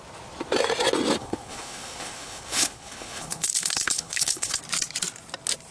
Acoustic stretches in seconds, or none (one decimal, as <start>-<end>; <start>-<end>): 0.0-1.2; 4.6-5.7

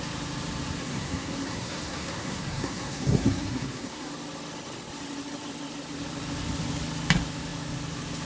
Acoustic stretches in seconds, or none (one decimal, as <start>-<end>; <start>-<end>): 0.0-0.8; 4.1-8.3

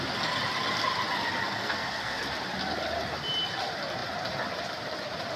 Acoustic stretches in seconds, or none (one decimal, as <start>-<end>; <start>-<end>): 0.0-1.4; 2.2-5.4